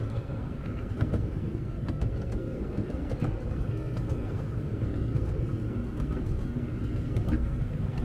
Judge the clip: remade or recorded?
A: remade